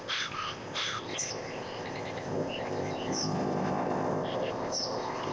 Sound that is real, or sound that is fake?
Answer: fake